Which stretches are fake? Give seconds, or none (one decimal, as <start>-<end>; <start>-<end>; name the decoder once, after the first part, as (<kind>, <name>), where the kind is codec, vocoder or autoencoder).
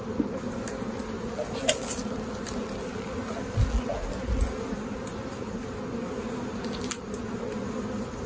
none